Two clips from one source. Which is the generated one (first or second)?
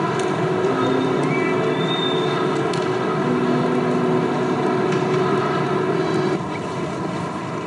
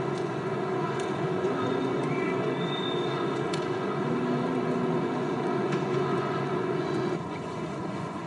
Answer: second